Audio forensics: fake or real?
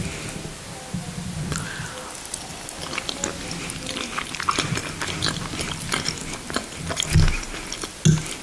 real